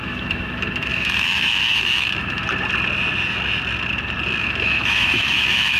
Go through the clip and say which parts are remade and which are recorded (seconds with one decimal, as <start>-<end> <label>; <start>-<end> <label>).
0.0-2.4 remade; 2.4-4.4 recorded; 4.4-5.8 remade